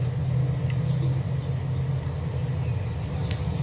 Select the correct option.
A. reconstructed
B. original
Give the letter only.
B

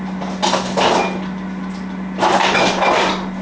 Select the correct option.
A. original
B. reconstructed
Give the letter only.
A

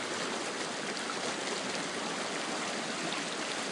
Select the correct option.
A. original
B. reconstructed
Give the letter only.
A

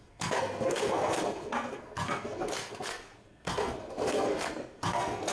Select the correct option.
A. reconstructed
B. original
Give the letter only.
A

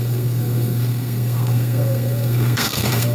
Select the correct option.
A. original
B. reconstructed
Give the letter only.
B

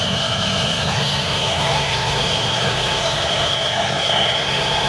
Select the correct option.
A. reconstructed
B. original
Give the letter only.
A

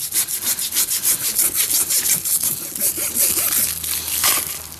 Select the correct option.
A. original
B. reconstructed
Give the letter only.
A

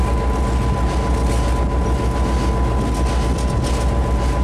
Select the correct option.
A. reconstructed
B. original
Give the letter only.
B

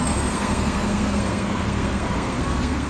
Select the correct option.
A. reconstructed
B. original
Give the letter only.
A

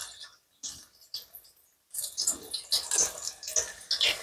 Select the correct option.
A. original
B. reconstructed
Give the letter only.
A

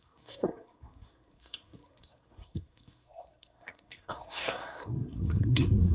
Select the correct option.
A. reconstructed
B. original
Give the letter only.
A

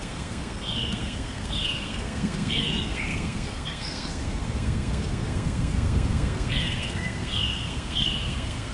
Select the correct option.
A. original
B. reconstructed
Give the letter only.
B